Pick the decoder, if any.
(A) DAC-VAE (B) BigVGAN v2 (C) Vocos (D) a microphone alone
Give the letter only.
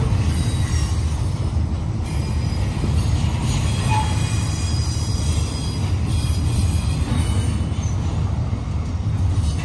D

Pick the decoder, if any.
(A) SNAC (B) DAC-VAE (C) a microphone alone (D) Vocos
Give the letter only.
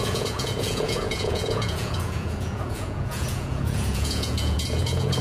D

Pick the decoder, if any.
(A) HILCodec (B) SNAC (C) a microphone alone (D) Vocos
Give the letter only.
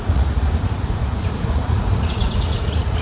D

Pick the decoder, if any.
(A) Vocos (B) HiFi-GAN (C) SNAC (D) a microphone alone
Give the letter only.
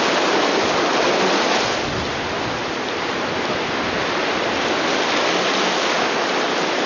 D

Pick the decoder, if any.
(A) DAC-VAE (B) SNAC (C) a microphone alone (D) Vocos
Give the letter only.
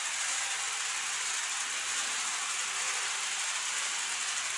C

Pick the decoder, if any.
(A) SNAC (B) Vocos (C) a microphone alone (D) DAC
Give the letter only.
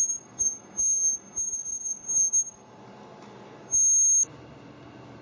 C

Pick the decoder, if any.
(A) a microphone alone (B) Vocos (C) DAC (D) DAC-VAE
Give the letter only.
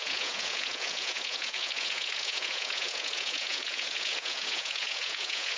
B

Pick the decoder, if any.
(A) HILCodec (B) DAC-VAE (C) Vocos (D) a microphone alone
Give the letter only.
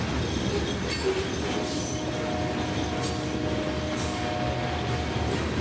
D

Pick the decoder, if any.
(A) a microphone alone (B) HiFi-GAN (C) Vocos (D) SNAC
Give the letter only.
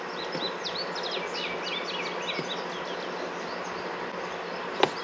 A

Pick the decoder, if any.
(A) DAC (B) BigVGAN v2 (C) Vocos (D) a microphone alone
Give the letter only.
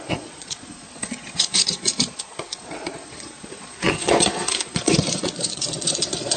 C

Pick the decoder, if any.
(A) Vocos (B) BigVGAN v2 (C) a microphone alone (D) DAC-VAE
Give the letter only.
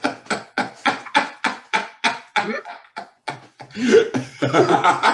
A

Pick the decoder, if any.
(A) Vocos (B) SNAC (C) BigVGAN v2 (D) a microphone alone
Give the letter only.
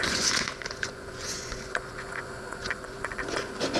A